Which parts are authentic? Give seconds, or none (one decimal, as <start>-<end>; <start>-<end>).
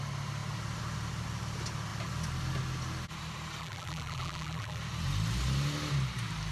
0.0-3.6; 4.8-6.5